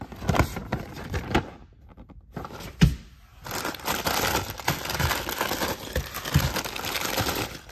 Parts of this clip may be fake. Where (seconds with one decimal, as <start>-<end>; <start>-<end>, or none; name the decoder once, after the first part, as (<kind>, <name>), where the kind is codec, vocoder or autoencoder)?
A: none